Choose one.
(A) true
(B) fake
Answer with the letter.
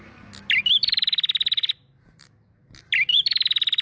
A